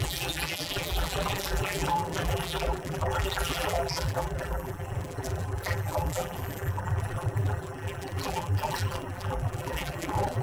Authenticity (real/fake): fake